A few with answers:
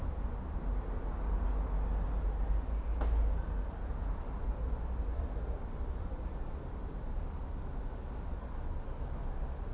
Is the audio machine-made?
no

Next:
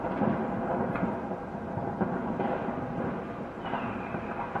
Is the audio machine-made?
yes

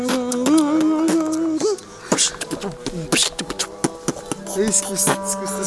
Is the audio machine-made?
no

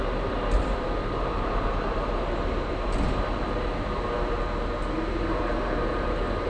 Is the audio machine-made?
no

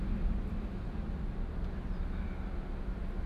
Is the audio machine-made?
no